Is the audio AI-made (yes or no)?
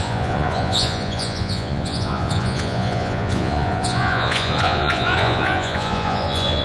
yes